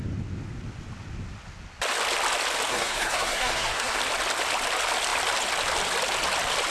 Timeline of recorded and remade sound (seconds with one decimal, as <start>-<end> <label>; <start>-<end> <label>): 0.0-2.7 recorded; 2.7-4.0 remade; 4.0-6.7 recorded